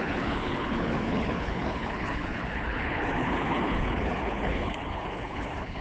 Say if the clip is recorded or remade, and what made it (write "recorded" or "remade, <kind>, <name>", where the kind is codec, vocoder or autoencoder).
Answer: remade, codec, HILCodec